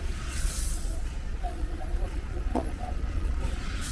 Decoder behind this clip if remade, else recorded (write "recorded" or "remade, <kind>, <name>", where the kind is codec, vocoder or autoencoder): remade, vocoder, Vocos